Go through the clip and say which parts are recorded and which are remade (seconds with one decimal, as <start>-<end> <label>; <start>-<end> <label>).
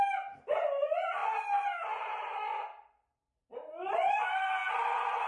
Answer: 0.0-1.2 remade; 1.2-3.9 recorded; 3.9-4.6 remade; 4.6-5.3 recorded